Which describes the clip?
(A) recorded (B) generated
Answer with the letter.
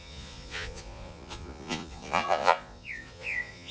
B